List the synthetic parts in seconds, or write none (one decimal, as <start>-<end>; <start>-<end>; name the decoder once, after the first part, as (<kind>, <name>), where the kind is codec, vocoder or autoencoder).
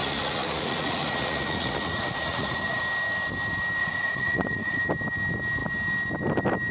0.0-2.8 (vocoder, Vocos); 3.8-4.8